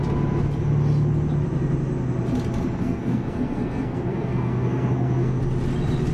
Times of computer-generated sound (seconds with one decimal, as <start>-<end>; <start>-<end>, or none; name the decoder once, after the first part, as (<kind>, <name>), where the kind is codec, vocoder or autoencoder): 2.8-5.4 (codec, SNAC)